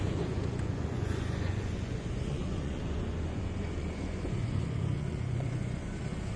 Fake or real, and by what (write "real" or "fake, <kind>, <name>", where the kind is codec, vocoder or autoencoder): fake, vocoder, Vocos